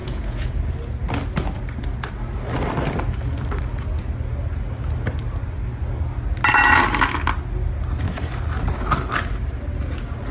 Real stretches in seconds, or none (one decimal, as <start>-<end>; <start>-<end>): 0.5-10.3